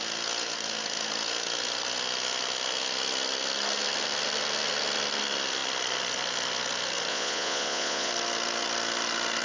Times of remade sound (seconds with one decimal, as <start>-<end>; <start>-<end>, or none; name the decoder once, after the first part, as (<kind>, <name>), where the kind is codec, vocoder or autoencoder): 7.1-8.1 (vocoder, Vocos)